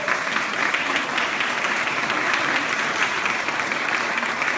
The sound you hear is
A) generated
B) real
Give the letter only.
B